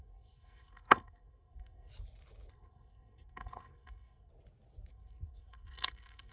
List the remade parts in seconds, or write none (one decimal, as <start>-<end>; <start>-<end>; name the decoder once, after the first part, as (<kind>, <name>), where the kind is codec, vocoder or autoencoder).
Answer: 0.0-1.9 (codec, SNAC); 2.5-4.3; 4.9-6.3